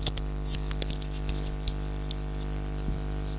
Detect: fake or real real